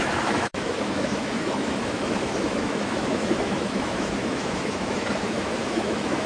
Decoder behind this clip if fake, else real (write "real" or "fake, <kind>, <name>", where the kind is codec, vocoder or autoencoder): fake, autoencoder, DAC-VAE